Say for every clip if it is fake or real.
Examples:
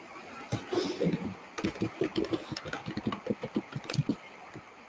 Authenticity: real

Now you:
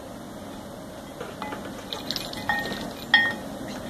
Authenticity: real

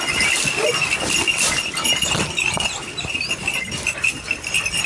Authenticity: real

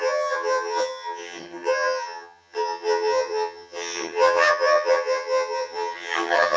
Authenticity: fake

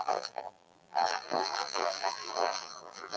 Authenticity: fake